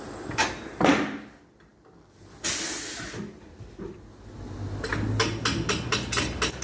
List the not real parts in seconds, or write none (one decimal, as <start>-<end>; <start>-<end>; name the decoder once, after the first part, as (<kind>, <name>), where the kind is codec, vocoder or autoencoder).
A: none

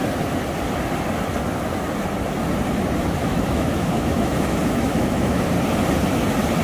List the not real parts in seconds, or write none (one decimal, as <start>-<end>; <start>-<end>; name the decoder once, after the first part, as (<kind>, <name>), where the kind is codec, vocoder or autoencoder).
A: 3.2-5.4 (autoencoder, DAC-VAE)

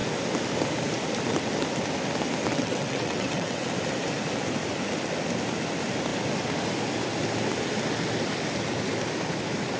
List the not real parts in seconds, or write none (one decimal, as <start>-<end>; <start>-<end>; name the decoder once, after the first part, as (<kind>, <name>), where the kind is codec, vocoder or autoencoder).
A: 2.5-3.7 (vocoder, WaveNeXt)

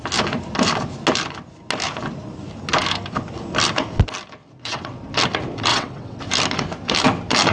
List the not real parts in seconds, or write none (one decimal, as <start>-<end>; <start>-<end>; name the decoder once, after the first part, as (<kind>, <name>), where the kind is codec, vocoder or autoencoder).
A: 4.4-5.0 (vocoder, WaveNeXt); 5.7-6.2

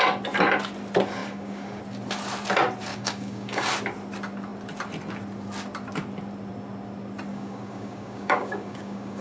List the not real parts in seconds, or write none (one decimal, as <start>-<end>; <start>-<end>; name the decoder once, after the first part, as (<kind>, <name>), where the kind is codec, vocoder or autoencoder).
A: 1.2-1.8 (codec, DAC); 2.9-3.7; 7.3-9.2

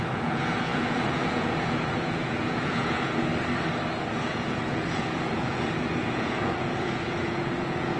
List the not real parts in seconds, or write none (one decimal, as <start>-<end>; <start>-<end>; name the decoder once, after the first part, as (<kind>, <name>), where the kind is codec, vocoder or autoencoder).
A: 0.0-3.3 (vocoder, Vocos); 4.1-8.0

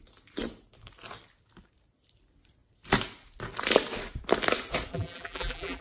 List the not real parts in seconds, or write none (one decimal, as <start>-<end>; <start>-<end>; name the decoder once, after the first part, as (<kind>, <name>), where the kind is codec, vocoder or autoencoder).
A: 4.9-5.8 (vocoder, BigVGAN v2)

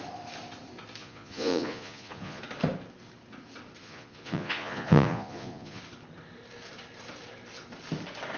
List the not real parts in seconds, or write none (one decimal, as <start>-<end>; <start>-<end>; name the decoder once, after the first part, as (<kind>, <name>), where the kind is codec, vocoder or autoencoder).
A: 1.0-2.4 (vocoder, Vocos); 3.8-5.8